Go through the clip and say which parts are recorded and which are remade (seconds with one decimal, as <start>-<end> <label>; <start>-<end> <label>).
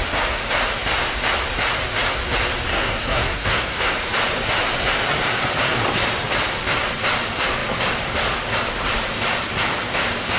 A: 0.0-2.7 recorded; 2.7-3.9 remade; 3.9-10.4 recorded